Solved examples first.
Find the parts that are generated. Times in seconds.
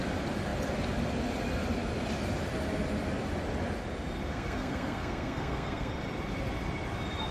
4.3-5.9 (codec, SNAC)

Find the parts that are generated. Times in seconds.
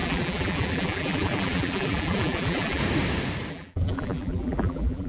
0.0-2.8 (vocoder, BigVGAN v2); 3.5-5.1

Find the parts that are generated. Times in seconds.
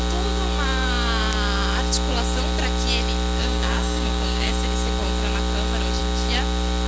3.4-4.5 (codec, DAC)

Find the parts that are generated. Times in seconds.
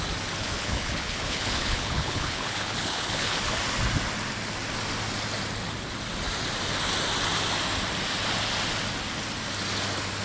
0.4-3.4 (codec, HILCodec)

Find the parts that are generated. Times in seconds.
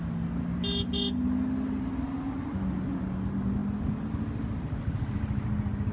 none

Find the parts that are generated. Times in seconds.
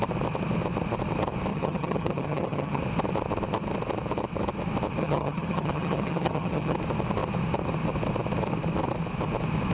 1.5-2.8 (vocoder, HiFi-GAN); 5.0-6.8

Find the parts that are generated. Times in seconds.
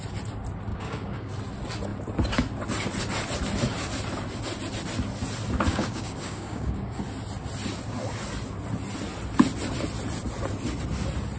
0.7-1.3 (codec, DAC); 5.7-7.0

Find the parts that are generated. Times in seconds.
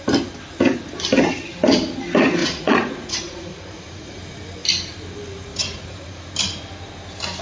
2.4-4.2 (vocoder, Vocos); 5.5-6.3